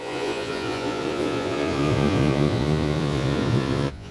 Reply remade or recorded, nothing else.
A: remade